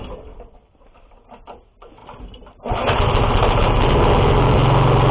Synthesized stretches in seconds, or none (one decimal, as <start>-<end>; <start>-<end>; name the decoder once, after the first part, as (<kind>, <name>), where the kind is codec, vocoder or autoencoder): none